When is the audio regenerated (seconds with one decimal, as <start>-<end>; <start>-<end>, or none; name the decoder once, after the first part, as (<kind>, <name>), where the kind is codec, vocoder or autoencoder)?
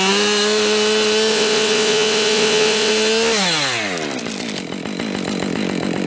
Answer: 1.3-2.9 (vocoder, WaveNeXt)